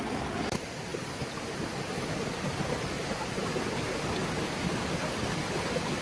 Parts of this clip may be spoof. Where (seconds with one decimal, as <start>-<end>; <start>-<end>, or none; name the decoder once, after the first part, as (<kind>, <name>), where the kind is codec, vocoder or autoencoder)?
none